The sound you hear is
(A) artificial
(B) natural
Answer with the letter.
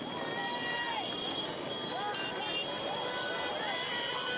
B